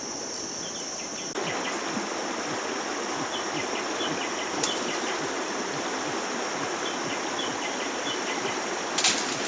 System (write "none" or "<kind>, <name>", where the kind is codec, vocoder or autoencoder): none